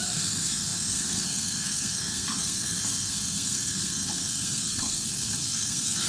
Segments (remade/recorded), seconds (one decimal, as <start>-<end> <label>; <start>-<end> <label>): 0.0-6.1 remade